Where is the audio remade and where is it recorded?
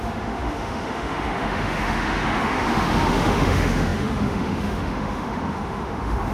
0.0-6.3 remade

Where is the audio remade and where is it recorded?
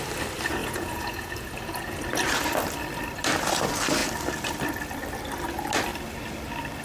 0.0-0.6 recorded; 0.6-2.0 remade; 2.0-6.8 recorded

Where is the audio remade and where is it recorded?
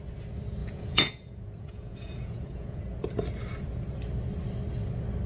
0.0-0.6 recorded; 0.6-2.8 remade; 2.8-5.3 recorded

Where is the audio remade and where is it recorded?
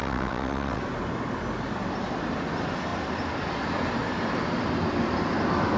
0.0-0.8 remade; 0.8-5.8 recorded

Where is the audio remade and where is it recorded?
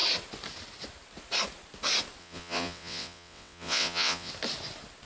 0.0-2.2 recorded; 2.2-4.3 remade; 4.3-5.1 recorded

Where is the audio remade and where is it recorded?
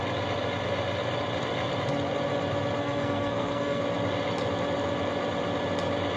0.0-2.8 recorded; 2.8-3.8 remade; 3.8-6.2 recorded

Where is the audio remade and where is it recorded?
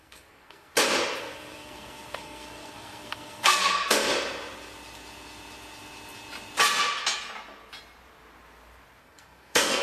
0.0-0.7 remade; 0.7-1.2 recorded; 1.2-4.1 remade; 4.1-9.0 recorded; 9.0-9.8 remade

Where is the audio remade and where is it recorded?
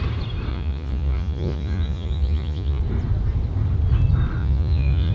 0.0-0.5 recorded; 0.5-2.8 remade; 2.8-4.4 recorded; 4.4-5.1 remade